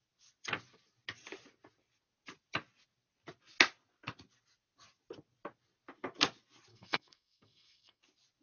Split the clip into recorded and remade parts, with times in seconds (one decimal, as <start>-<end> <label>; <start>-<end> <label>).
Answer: 0.0-6.7 recorded; 6.7-8.0 remade; 8.0-8.4 recorded